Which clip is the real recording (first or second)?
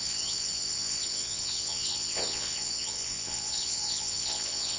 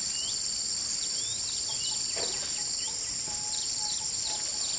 second